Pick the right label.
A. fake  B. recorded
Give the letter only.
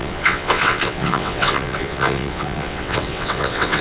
A